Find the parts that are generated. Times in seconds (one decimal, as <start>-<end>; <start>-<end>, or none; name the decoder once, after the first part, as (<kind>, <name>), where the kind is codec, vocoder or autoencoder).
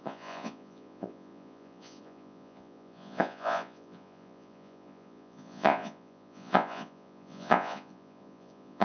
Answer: 0.0-8.8 (vocoder, Vocos)